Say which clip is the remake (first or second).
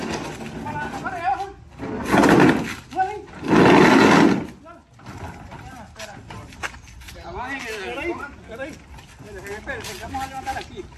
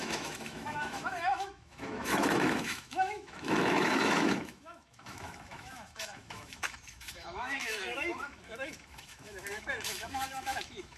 second